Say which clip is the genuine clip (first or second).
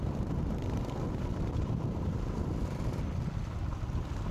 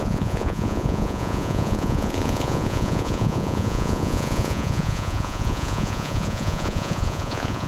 first